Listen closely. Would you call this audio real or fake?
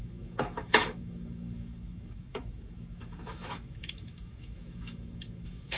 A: fake